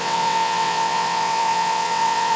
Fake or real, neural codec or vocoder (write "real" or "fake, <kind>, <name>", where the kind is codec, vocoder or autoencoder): fake, vocoder, WaveNeXt